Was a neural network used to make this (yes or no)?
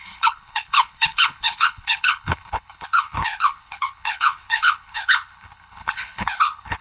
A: yes